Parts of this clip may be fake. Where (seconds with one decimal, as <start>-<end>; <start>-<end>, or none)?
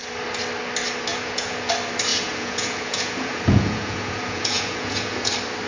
1.1-1.7; 2.1-5.3